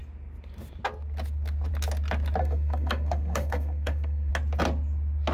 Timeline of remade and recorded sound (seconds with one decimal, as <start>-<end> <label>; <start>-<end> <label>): 0.0-2.4 recorded; 2.4-4.3 remade; 4.3-5.3 recorded